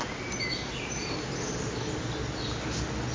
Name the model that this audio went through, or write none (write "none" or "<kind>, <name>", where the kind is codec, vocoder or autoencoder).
none